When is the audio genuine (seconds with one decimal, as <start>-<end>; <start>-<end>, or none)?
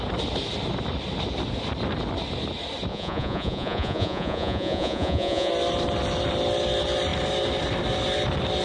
0.0-2.9; 5.5-8.6